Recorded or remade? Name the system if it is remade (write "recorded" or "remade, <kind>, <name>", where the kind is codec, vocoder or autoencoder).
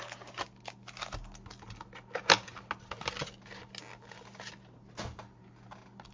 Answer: recorded